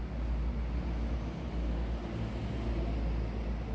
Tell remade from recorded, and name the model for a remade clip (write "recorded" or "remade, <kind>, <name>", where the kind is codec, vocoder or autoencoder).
recorded